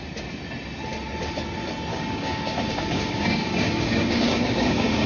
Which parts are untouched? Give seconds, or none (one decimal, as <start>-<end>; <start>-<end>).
0.0-1.9